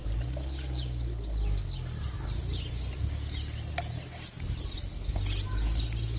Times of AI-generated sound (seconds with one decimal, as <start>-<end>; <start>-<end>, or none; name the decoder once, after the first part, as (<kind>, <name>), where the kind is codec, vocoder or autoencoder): none